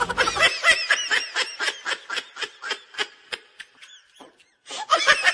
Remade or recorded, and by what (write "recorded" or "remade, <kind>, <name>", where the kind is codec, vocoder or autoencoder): recorded